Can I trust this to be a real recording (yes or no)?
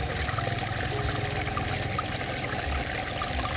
yes